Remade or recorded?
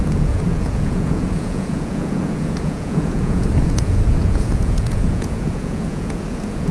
remade